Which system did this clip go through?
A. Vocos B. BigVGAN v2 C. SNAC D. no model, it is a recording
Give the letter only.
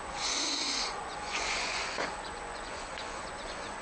A